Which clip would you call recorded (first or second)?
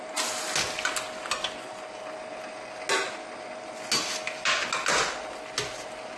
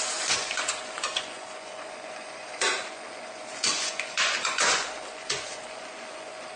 first